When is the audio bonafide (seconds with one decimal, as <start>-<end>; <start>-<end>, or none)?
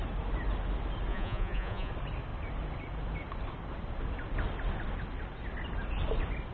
0.0-1.1; 1.9-6.5